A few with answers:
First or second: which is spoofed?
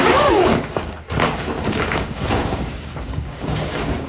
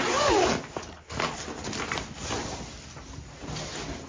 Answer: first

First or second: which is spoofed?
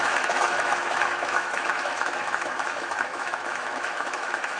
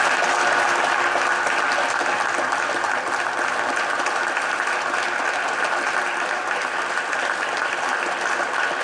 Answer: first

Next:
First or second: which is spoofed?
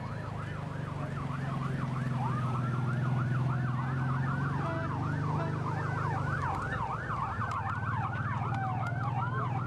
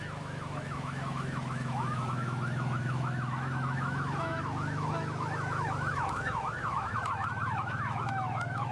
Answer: second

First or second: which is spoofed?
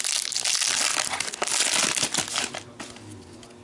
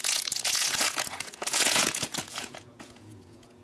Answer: second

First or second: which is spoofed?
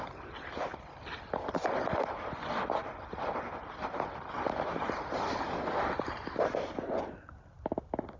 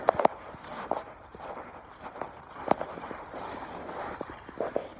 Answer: second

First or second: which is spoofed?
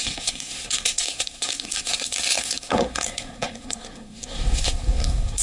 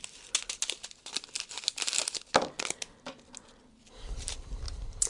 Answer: first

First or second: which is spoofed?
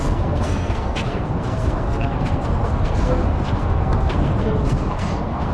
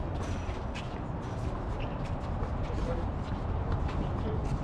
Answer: first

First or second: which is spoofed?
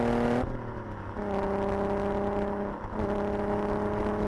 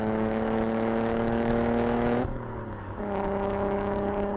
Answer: second